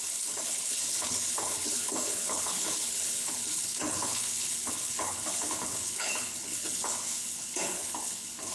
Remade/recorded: remade